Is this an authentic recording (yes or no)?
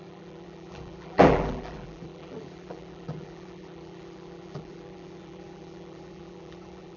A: no